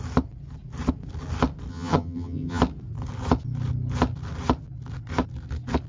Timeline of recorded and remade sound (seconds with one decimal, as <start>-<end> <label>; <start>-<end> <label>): 0.0-1.7 recorded; 1.7-2.6 remade; 2.6-5.9 recorded